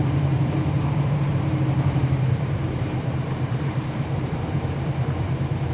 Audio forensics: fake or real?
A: fake